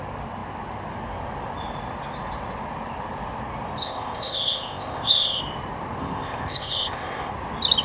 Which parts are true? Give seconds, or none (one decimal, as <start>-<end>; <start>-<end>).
0.0-3.8; 5.4-6.0; 7.3-7.8